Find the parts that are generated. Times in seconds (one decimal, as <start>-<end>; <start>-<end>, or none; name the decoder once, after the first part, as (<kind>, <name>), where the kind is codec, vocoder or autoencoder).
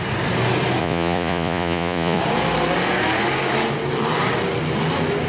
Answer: 0.8-2.2 (vocoder, Vocos)